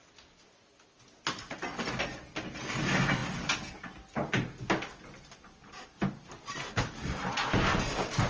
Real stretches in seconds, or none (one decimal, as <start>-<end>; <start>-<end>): 0.0-8.3